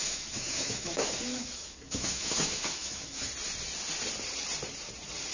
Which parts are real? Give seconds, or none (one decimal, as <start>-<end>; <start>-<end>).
3.3-5.3